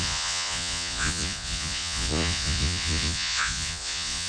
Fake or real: fake